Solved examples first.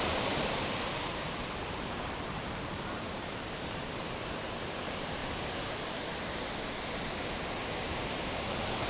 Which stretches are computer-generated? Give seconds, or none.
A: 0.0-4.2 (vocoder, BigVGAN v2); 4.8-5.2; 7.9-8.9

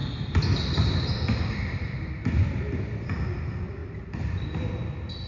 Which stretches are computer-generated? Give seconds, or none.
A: 0.0-2.1 (vocoder, BigVGAN v2)

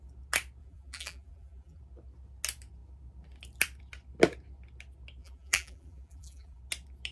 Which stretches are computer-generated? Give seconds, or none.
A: 0.6-1.8 (vocoder, BigVGAN v2); 5.2-6.6

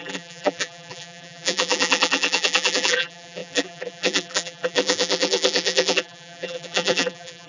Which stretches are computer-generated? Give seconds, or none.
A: 0.0-7.5 (vocoder, BigVGAN v2)